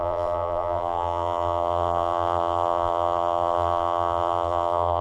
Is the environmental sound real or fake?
fake